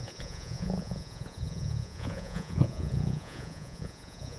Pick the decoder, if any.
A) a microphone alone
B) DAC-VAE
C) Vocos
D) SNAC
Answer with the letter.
C